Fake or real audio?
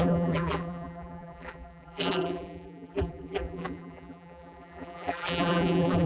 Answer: fake